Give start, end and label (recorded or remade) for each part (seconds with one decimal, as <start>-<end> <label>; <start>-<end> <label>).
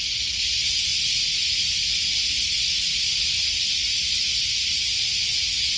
0.0-5.8 recorded